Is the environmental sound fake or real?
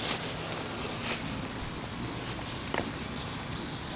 real